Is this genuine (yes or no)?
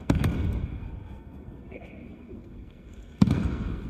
no